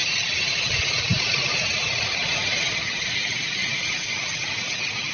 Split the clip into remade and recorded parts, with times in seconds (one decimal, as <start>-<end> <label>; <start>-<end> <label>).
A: 0.0-0.8 remade; 0.8-1.5 recorded; 1.5-2.5 remade; 2.5-5.1 recorded